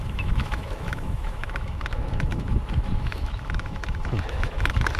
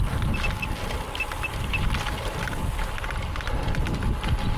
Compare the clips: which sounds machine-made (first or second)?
first